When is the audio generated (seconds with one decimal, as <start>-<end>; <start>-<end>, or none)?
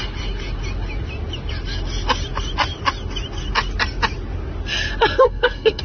5.1-5.8